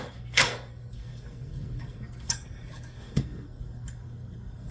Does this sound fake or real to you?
fake